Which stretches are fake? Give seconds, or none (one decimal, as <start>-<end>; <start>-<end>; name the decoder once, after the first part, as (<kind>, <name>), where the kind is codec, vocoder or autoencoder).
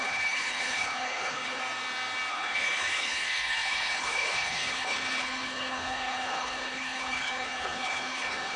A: 0.0-1.6 (codec, HILCodec); 2.3-8.6